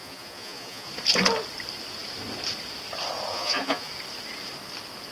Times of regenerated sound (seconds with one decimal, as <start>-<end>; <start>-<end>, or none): 0.0-0.9; 3.3-3.9